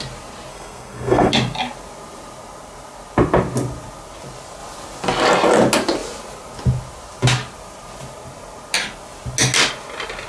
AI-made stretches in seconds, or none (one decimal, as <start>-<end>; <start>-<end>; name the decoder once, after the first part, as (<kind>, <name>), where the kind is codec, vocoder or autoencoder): 0.5-1.3 (codec, SNAC)